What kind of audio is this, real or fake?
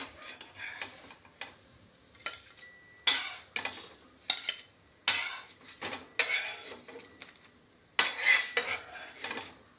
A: real